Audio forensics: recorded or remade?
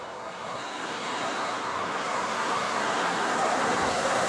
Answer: remade